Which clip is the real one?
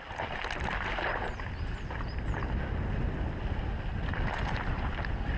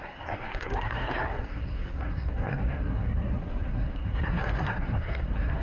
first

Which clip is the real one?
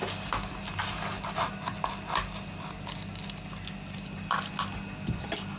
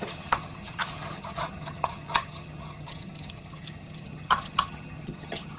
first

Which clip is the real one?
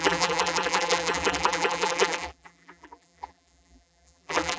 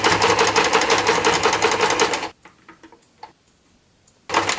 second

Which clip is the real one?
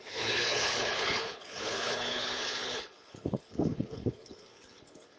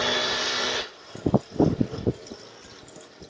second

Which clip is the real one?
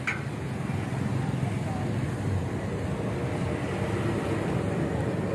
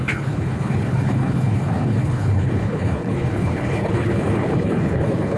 first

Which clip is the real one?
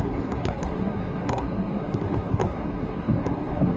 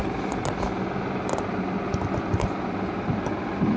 second